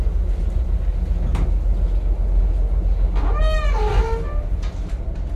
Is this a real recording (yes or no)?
yes